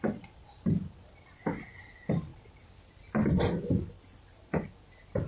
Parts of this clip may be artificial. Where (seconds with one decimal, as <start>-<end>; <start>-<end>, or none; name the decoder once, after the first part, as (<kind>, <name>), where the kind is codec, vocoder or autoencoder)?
none